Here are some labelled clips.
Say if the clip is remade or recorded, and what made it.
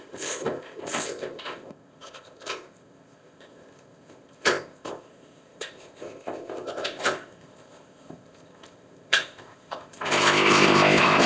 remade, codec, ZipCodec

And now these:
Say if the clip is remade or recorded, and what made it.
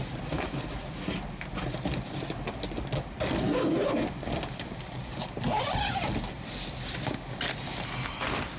recorded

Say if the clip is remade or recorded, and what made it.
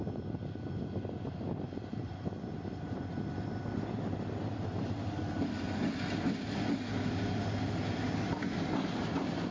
recorded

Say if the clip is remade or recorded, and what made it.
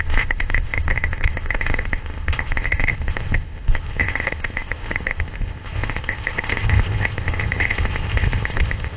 remade, codec, ZipCodec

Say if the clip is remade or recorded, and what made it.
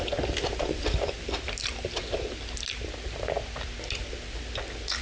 recorded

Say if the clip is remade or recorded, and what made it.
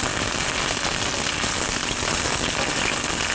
recorded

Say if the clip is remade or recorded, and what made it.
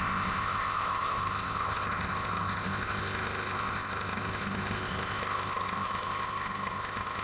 remade, codec, ZipCodec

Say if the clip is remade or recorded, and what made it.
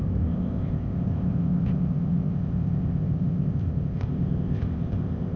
remade, codec, ZipCodec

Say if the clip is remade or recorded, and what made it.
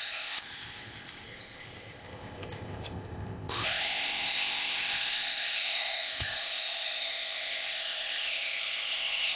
remade, codec, ZipCodec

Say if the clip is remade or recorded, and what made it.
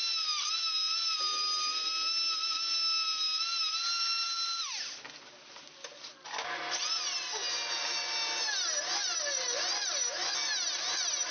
recorded